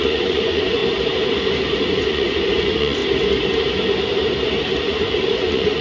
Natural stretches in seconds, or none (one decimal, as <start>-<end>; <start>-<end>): 0.8-1.8; 3.0-4.8